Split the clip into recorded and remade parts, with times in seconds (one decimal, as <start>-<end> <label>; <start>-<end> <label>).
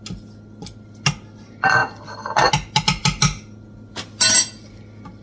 0.0-5.2 recorded